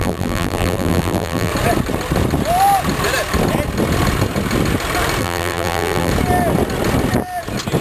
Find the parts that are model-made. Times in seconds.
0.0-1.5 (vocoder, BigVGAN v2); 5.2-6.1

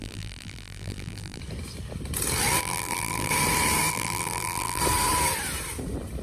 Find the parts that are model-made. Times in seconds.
0.0-1.4 (vocoder, BigVGAN v2); 2.6-3.3; 3.9-4.8

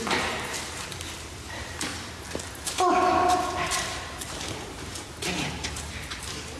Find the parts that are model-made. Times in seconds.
0.0-1.9 (vocoder, BigVGAN v2); 2.5-4.9; 6.1-6.6

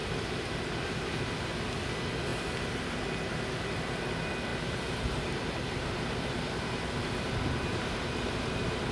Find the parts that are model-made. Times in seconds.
0.0-1.2 (vocoder, BigVGAN v2); 4.5-8.5

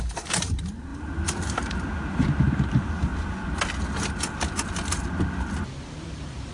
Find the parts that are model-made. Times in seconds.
0.0-3.1 (vocoder, BigVGAN v2); 5.9-6.5

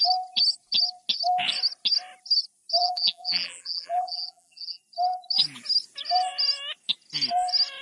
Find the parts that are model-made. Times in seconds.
2.8-4.8 (vocoder, BigVGAN v2)